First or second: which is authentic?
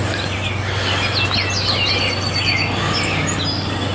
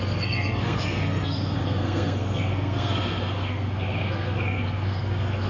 first